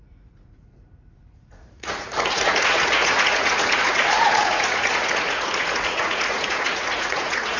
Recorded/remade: remade